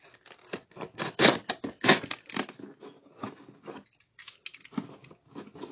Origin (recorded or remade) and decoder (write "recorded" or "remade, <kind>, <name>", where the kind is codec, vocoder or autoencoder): recorded